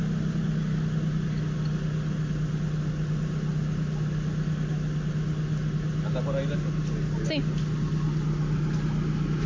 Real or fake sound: real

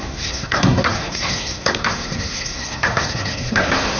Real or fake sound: fake